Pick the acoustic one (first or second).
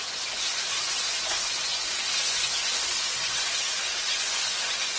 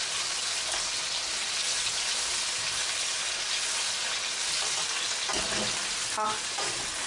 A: second